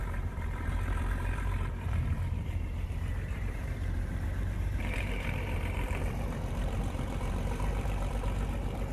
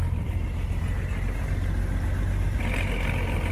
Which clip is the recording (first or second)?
second